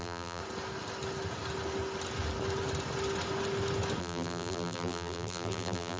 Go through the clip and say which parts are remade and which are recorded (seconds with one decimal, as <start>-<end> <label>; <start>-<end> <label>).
0.0-0.4 remade; 0.4-4.0 recorded; 4.0-6.0 remade

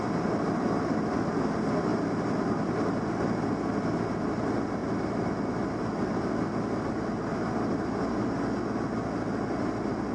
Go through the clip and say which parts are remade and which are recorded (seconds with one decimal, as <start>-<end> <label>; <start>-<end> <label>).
0.0-10.1 recorded